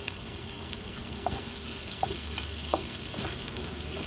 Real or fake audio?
fake